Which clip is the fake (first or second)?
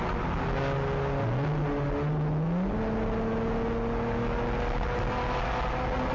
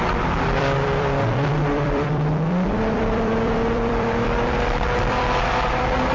second